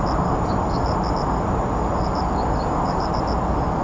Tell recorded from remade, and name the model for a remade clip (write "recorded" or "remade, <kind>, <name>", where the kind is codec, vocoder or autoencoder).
recorded